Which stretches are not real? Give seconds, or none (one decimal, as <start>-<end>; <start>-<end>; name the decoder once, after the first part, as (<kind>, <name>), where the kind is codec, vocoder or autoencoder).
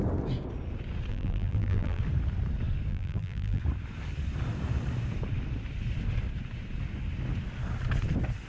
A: 1.1-2.0 (vocoder, BigVGAN v2); 2.9-3.6